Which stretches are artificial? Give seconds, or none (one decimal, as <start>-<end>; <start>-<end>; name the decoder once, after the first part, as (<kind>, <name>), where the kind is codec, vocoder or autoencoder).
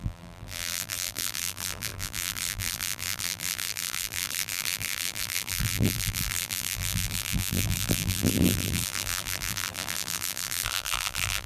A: 0.0-11.5 (vocoder, BigVGAN v2)